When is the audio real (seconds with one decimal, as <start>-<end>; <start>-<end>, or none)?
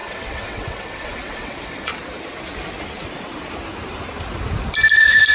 1.9-5.3